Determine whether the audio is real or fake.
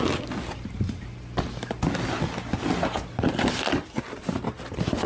real